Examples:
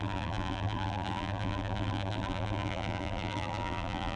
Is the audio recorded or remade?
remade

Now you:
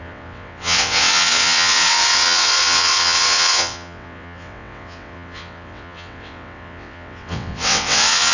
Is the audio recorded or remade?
remade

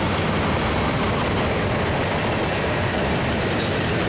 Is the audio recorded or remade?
recorded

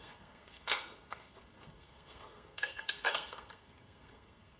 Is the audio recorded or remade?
remade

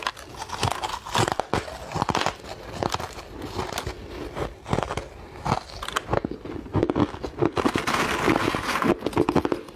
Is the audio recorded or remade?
recorded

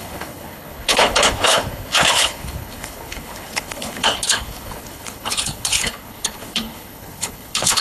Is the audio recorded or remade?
remade